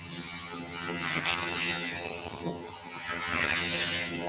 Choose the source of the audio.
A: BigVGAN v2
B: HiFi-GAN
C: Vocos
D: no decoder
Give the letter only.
B